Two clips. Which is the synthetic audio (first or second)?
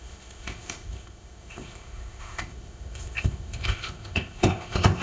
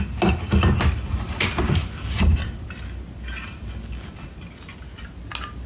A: first